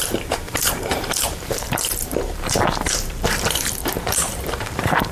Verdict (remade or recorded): remade